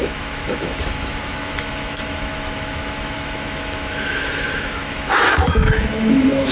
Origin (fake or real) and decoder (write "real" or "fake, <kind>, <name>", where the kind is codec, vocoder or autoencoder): fake, autoencoder, DAC-VAE